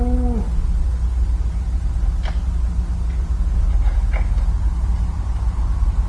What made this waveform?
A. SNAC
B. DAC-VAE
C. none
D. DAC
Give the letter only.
C